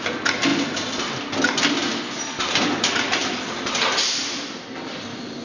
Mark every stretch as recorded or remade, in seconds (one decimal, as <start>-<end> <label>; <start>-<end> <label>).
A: 0.0-5.4 recorded